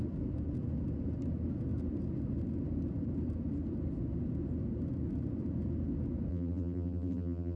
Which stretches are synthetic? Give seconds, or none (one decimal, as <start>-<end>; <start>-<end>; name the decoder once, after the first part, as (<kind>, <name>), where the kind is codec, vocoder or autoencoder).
6.3-7.6 (vocoder, BigVGAN v2)